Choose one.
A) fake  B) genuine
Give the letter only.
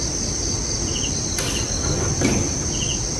B